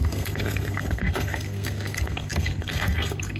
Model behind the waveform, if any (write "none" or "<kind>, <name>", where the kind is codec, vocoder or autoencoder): codec, SNAC